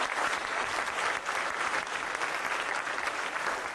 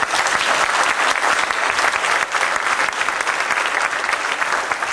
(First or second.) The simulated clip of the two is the first